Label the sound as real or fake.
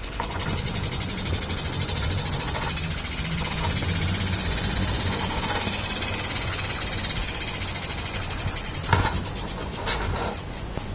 fake